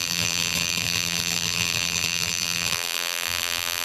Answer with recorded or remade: remade